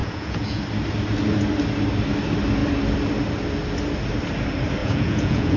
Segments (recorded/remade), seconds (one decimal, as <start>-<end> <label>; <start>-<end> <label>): 0.0-0.6 remade; 0.6-4.8 recorded; 4.8-5.6 remade